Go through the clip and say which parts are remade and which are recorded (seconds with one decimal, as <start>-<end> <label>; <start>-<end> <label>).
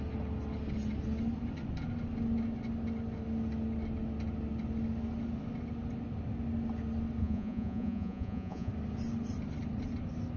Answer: 0.0-7.2 recorded; 7.2-8.7 remade; 8.7-10.4 recorded